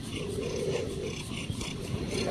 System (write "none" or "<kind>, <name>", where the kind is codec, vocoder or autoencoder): none